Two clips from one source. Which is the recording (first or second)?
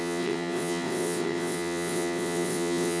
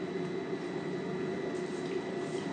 second